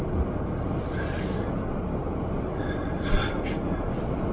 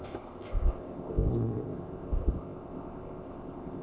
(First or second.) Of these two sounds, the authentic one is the first